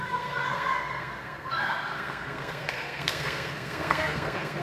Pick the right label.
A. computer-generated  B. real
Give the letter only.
A